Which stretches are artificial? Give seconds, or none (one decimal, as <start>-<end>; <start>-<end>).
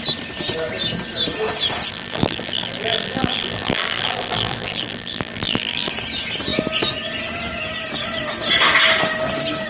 1.9-5.9